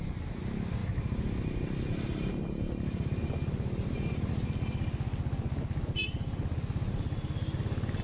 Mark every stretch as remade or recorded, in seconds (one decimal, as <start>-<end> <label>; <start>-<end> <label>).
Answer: 0.0-0.8 recorded; 0.8-4.3 remade; 4.3-8.0 recorded